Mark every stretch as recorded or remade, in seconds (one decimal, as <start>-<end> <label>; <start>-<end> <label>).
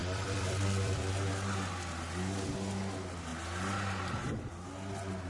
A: 0.0-1.1 remade; 1.1-5.3 recorded